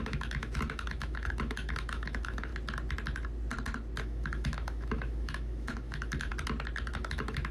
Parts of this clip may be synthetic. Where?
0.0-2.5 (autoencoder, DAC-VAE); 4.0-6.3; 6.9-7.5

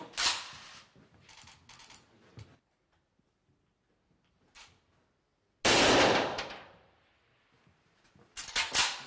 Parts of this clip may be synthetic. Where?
none

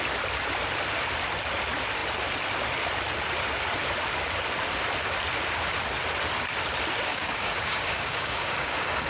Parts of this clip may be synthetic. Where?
7.1-9.1 (codec, DAC)

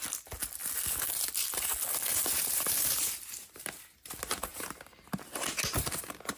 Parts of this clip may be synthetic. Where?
2.1-3.6 (vocoder, BigVGAN v2); 4.5-6.4

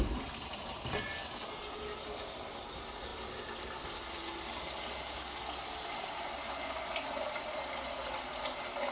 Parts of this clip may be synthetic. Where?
none

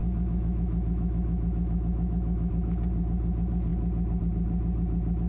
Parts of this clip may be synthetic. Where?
0.0-2.5 (autoencoder, DAC-VAE)

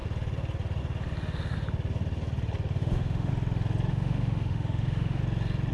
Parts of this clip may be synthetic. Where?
2.8-3.3 (autoencoder, DAC-VAE); 3.9-5.2

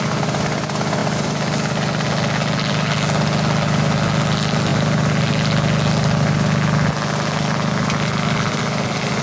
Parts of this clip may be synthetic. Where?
none